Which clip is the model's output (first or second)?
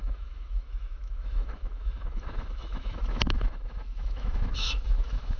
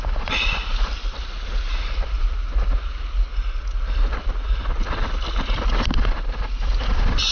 first